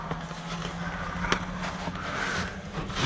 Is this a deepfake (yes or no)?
no